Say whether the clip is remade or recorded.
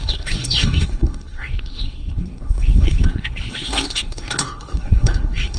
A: remade